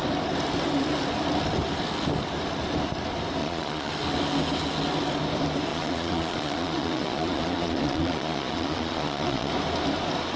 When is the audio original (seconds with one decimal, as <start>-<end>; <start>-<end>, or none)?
0.0-3.4; 3.9-5.7; 9.5-10.4